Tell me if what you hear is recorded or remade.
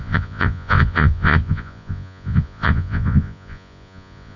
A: remade